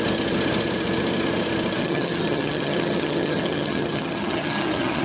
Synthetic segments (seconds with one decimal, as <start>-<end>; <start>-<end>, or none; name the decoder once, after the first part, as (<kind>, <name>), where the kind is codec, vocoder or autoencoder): 1.8-5.0 (vocoder, HiFi-GAN)